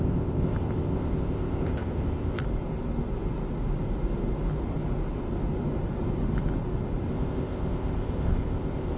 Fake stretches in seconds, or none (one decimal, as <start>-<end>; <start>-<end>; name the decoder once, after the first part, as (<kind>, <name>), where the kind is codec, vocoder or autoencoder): 0.0-2.4 (codec, ZipCodec); 7.1-9.0